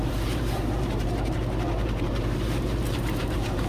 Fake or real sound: fake